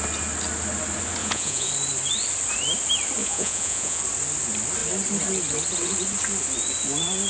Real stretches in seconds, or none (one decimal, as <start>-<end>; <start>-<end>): 0.0-1.2; 1.7-3.2; 4.0-7.3